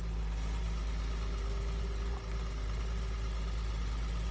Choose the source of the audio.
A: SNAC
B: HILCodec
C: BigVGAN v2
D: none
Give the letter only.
D